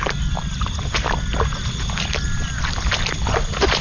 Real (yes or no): yes